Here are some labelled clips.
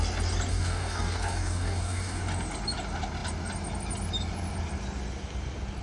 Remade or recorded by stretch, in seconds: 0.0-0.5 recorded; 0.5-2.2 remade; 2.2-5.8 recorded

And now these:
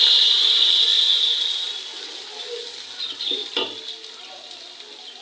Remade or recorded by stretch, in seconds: 0.0-0.9 recorded; 0.9-1.4 remade; 1.4-3.4 recorded; 3.4-4.2 remade; 4.2-5.2 recorded

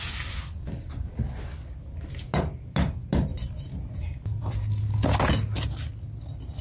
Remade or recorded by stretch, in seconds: 0.0-3.3 recorded; 3.3-5.2 remade; 5.2-6.6 recorded

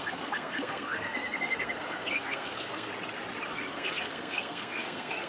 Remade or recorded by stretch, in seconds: 0.0-2.9 remade; 2.9-3.5 recorded; 3.5-5.3 remade

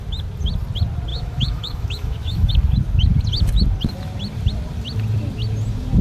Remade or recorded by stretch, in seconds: 0.0-1.1 recorded; 1.1-2.5 remade; 2.5-6.0 recorded

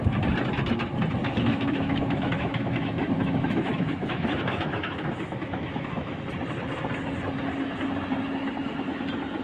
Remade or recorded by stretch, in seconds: 0.0-1.2 recorded; 1.2-6.2 remade; 6.2-9.4 recorded